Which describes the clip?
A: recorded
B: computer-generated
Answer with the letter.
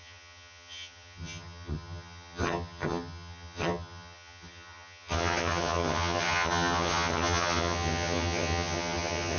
B